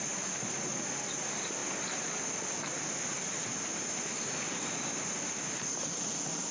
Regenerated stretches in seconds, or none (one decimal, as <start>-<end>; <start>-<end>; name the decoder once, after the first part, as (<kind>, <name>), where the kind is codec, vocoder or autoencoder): none